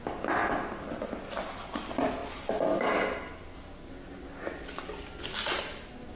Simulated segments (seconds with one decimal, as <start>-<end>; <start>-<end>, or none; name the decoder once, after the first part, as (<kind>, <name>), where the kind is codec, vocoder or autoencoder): none